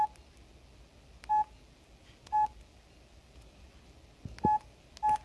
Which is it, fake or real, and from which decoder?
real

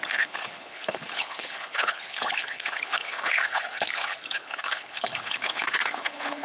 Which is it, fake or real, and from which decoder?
fake, codec, HILCodec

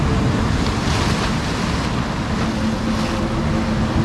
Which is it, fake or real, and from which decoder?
real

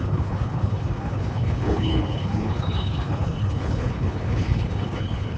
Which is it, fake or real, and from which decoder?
fake, codec, HILCodec